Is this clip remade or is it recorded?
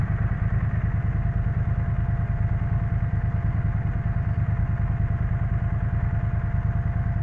recorded